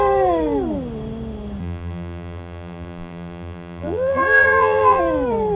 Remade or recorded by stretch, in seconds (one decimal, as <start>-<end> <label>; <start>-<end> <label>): 0.0-1.6 recorded; 1.6-5.0 remade; 5.0-5.6 recorded